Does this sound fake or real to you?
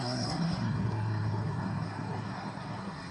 fake